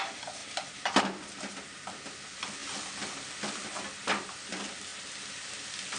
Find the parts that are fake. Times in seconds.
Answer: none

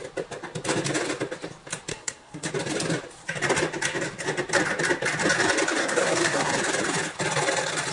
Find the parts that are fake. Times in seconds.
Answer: 1.9-2.5 (codec, SNAC); 5.8-6.5

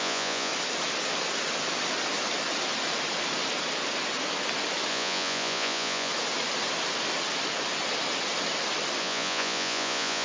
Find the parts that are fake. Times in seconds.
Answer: 0.0-0.5 (vocoder, Vocos); 4.9-6.1; 9.0-10.2

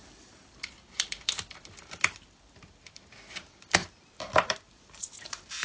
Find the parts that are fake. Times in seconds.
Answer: 0.0-5.6 (vocoder, BigVGAN v2)

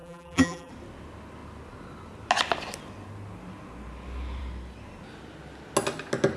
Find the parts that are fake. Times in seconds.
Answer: 0.0-0.7 (vocoder, BigVGAN v2)

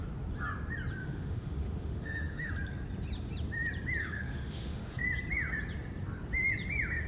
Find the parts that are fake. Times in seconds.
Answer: 1.0-2.5 (autoencoder, DAC-VAE); 4.0-5.0

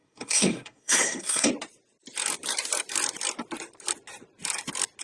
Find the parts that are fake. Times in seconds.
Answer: 0.0-1.5 (codec, SNAC)